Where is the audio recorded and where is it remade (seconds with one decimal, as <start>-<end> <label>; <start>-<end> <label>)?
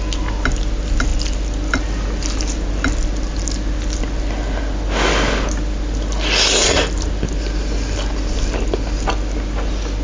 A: 0.0-10.0 recorded